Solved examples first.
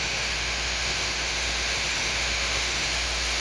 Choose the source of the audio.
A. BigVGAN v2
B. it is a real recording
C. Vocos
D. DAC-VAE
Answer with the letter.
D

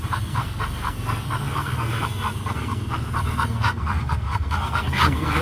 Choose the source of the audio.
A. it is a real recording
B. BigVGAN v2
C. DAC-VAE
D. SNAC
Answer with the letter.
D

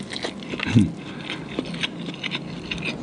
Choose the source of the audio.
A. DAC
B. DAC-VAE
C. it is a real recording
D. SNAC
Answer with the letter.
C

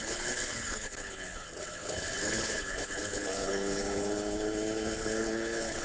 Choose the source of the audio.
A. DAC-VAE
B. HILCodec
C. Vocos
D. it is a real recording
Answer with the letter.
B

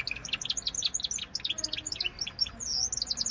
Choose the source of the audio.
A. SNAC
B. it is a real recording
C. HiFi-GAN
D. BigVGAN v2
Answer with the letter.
B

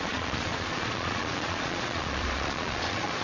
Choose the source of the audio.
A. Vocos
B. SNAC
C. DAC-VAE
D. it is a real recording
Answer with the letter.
A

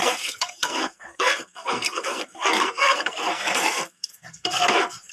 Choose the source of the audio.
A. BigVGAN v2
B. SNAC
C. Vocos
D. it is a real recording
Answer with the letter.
B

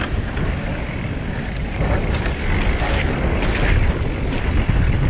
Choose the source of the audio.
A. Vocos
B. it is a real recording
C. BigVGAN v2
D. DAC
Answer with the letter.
B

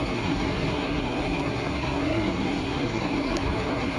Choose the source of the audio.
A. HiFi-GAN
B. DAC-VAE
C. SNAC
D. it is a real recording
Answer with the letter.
C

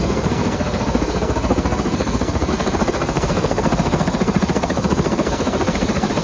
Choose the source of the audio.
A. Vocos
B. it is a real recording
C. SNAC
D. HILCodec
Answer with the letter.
C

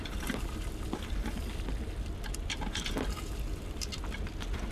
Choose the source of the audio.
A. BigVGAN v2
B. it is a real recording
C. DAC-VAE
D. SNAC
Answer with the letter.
B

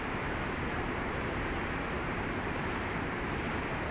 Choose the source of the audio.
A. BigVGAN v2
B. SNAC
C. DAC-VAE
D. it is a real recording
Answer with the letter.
A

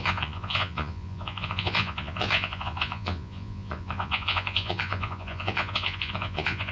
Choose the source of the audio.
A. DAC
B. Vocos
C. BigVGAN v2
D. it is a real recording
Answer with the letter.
B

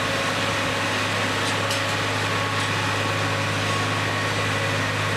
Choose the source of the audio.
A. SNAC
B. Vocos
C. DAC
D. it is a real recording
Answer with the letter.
D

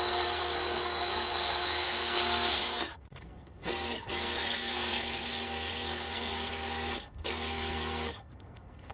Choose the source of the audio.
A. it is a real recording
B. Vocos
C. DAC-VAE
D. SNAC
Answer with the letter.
D